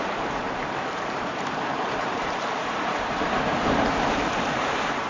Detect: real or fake fake